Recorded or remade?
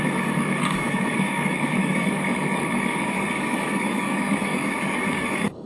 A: remade